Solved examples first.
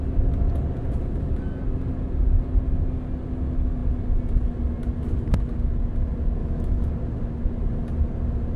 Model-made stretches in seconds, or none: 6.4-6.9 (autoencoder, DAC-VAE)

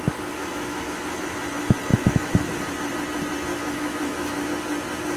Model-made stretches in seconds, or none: 0.5-1.0 (autoencoder, DAC-VAE); 1.9-2.5; 3.5-4.5

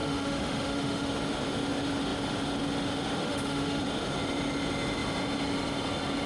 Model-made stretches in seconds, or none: 0.0-1.1 (autoencoder, DAC-VAE); 3.2-3.8

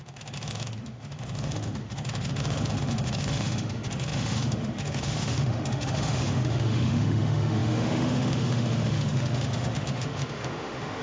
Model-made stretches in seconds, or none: 0.0-11.0 (autoencoder, DAC-VAE)

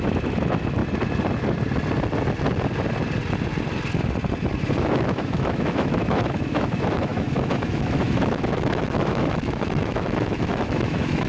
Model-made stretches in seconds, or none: 0.0-0.8 (autoencoder, DAC-VAE); 4.7-11.3